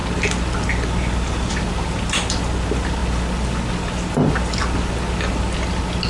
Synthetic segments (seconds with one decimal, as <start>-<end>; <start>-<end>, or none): none